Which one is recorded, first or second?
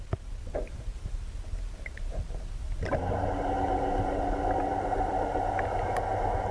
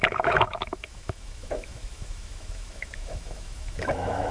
first